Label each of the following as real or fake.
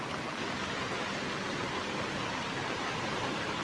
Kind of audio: real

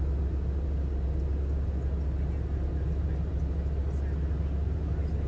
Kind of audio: real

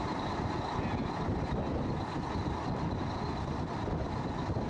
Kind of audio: real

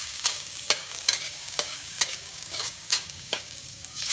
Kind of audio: fake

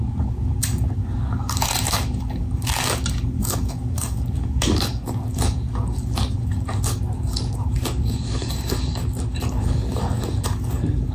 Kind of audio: fake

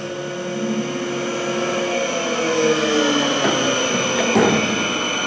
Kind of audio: real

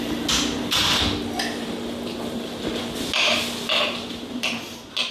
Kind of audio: real